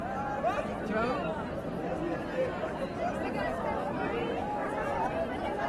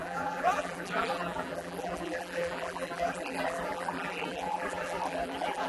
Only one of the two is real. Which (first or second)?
first